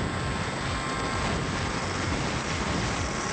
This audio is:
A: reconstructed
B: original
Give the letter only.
B